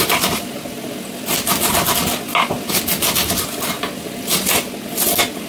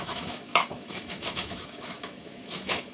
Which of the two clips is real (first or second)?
first